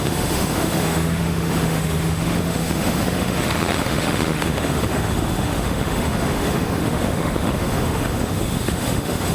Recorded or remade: remade